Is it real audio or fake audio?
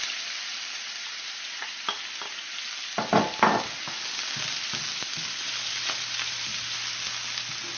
real